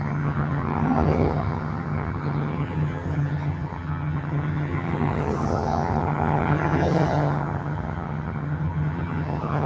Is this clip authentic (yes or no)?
no